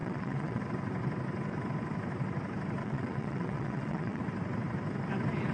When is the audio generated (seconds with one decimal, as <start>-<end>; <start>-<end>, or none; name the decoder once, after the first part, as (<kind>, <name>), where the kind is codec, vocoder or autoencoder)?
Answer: 0.0-0.6 (vocoder, WaveNeXt); 2.8-4.2